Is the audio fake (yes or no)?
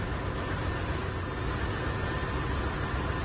no